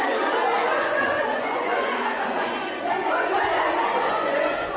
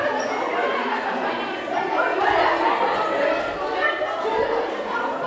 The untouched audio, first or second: second